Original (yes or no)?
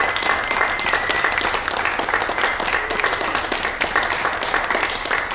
yes